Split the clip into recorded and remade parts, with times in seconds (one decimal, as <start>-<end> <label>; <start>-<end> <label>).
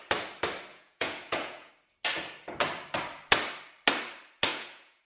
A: 0.0-0.7 recorded; 0.7-1.7 remade; 1.7-4.5 recorded; 4.5-5.0 remade